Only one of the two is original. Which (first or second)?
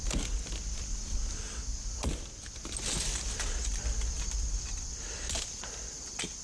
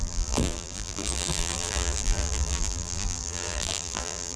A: first